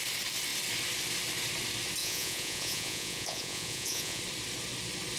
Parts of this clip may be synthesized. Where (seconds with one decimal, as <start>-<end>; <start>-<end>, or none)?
2.0-4.2

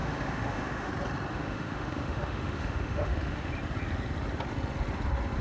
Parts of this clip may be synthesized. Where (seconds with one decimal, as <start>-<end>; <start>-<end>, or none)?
0.0-0.9; 1.3-3.5

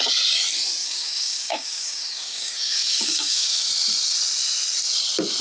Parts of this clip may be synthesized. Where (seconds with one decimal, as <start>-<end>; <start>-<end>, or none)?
0.8-3.7

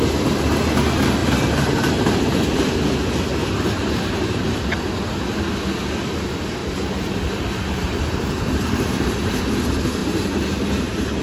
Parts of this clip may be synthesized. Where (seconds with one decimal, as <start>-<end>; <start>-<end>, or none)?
3.4-4.6; 6.6-9.4; 10.0-11.2

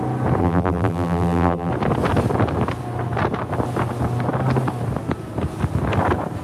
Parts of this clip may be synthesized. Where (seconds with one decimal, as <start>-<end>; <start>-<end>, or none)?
0.4-1.7

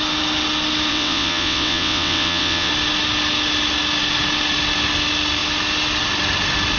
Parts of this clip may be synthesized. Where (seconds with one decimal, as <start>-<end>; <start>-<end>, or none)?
0.9-2.7

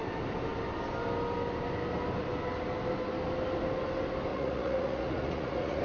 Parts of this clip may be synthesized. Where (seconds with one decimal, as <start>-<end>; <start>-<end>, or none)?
4.3-5.8